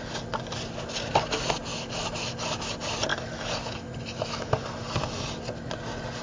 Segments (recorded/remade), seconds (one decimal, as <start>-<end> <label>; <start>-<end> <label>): 0.0-1.7 recorded; 1.7-2.7 remade; 2.7-3.1 recorded; 3.1-4.5 remade; 4.5-6.2 recorded